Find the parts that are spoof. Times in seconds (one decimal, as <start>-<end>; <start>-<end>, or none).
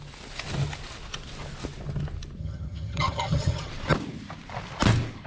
2.4-3.7